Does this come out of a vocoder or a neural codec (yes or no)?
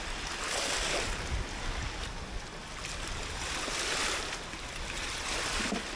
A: no